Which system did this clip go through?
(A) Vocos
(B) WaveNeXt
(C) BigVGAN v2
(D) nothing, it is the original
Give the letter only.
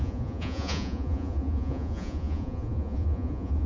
A